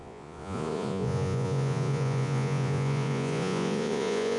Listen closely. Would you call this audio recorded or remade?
remade